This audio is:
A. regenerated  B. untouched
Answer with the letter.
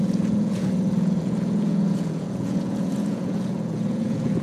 A